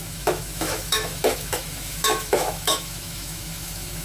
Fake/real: fake